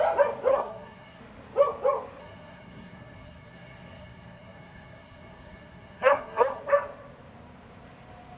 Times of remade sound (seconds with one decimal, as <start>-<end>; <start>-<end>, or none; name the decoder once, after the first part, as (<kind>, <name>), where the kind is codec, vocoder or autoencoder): 0.5-1.2 (codec, SNAC); 2.2-6.6